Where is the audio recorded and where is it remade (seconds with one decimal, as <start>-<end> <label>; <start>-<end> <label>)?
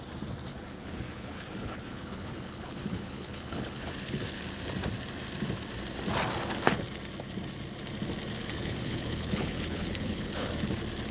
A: 0.0-0.5 recorded; 0.5-4.4 remade; 4.4-8.4 recorded; 8.4-10.5 remade; 10.5-11.1 recorded